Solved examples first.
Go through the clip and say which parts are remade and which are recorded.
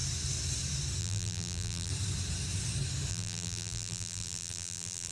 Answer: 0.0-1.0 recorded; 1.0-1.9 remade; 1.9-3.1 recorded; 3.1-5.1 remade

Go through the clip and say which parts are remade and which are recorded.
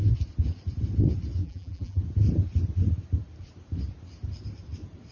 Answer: 0.0-1.4 recorded; 1.4-2.0 remade; 2.0-5.1 recorded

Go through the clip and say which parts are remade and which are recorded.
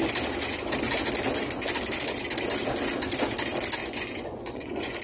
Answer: 0.0-3.8 recorded; 3.8-5.0 remade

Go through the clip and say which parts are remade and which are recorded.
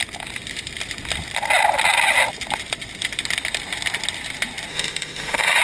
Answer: 0.0-4.7 recorded; 4.7-5.6 remade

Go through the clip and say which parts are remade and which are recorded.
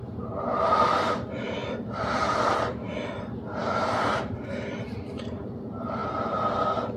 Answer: 0.0-6.0 remade; 6.0-7.0 recorded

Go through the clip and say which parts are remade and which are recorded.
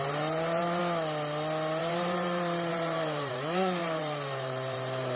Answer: 0.0-0.8 remade; 0.8-1.8 recorded; 1.8-5.2 remade